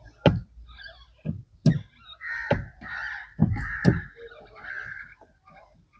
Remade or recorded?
recorded